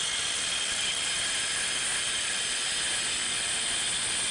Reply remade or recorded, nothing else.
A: recorded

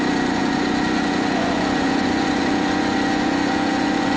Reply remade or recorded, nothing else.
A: remade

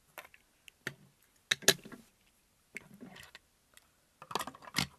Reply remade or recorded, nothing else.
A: recorded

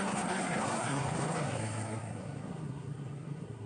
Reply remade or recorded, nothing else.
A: remade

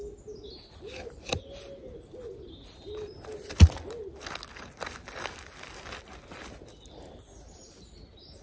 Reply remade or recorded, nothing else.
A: recorded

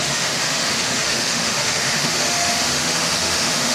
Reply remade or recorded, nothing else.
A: remade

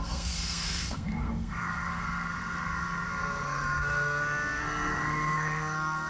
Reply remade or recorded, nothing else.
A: remade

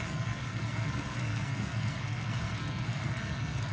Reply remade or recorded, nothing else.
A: remade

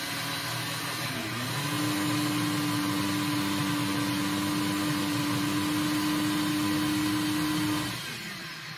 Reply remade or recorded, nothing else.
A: recorded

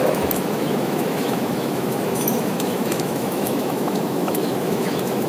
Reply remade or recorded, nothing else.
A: remade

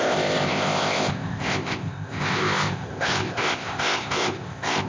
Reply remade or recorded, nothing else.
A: remade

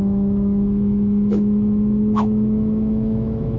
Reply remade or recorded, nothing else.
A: remade